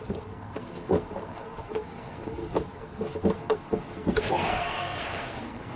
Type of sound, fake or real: fake